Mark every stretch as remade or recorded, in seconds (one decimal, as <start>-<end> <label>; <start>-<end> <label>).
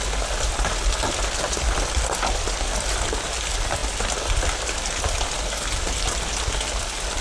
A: 0.0-7.2 recorded